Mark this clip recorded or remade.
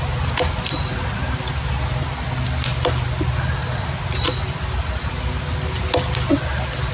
recorded